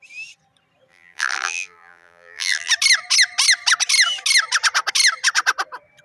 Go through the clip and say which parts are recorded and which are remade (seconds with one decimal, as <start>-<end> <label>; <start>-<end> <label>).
0.0-0.9 recorded; 0.9-2.7 remade; 2.7-6.0 recorded